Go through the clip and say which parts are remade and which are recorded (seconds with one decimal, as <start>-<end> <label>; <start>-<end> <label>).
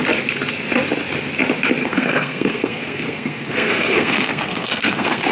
0.0-1.8 recorded; 1.8-5.3 remade